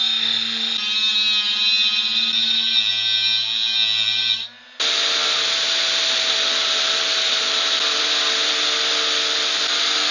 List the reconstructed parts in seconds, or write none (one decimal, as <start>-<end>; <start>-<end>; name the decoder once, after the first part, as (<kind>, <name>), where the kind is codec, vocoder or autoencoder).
none